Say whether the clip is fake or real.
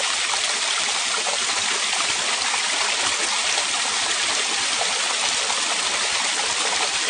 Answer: fake